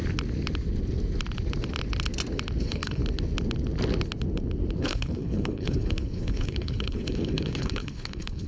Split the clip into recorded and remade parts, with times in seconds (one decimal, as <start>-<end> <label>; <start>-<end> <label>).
0.0-2.6 recorded; 2.6-3.0 remade; 3.0-4.8 recorded; 4.8-8.5 remade